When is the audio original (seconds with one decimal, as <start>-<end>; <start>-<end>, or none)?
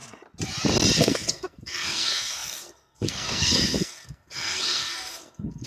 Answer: 0.0-1.0